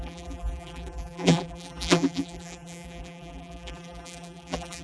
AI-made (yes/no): yes